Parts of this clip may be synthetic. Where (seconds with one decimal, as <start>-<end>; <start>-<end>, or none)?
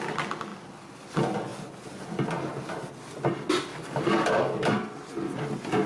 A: 3.7-4.7